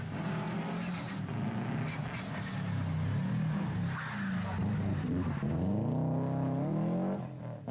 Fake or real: real